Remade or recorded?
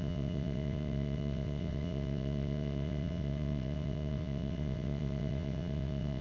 remade